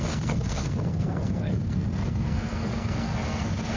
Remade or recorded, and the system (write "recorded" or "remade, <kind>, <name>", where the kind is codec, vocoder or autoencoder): remade, codec, SNAC